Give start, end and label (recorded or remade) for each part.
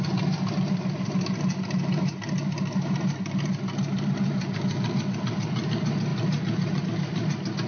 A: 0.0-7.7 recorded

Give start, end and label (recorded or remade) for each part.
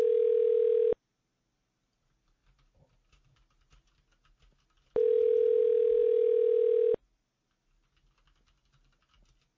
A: 0.0-9.6 recorded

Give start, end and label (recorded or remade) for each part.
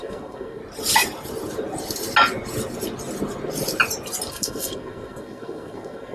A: 0.0-0.6 remade; 0.6-4.3 recorded; 4.3-6.1 remade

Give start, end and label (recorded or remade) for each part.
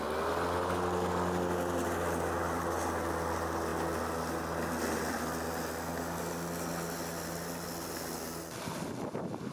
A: 0.0-9.5 recorded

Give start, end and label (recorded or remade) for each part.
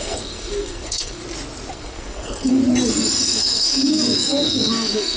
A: 0.0-1.2 remade; 1.2-1.7 recorded; 1.7-2.6 remade; 2.6-3.2 recorded; 3.2-5.2 remade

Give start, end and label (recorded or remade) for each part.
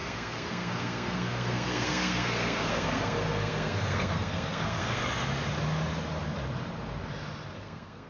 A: 0.0-5.0 remade; 5.0-7.5 recorded; 7.5-8.1 remade